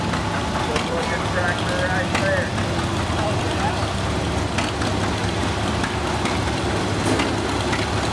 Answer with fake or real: real